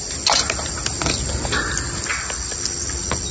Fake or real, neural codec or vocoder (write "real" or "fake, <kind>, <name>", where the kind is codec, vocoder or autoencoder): real